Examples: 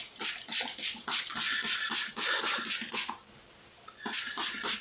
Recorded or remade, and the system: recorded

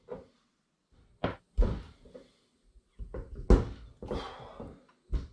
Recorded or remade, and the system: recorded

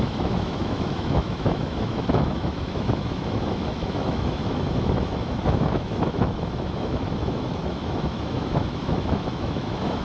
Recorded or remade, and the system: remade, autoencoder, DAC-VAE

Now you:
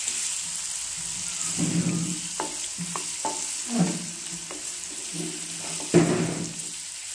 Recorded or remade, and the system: recorded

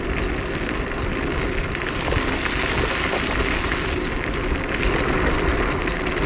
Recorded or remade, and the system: recorded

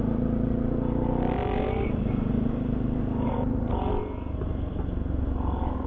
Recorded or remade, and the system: recorded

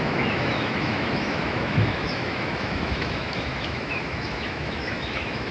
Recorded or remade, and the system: remade, autoencoder, DAC-VAE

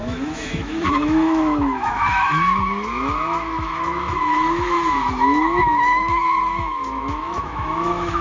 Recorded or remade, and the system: remade, autoencoder, DAC-VAE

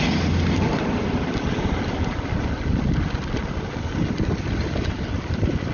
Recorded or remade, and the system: recorded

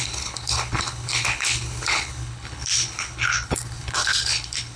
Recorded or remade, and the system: remade, codec, HILCodec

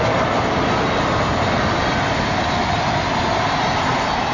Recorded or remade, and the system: recorded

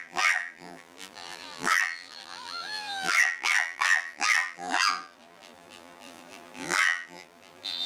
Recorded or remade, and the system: remade, vocoder, BigVGAN v2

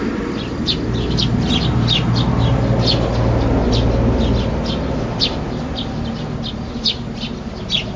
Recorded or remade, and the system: recorded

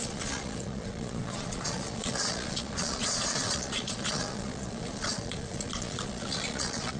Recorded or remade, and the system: remade, vocoder, Vocos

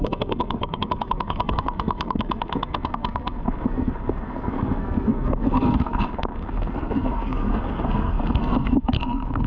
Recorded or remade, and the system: remade, codec, SNAC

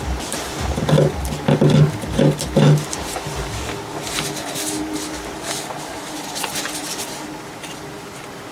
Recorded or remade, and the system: recorded